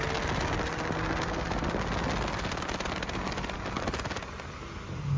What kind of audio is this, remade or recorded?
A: recorded